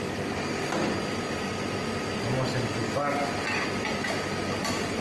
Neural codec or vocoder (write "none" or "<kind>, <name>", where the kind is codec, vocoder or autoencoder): none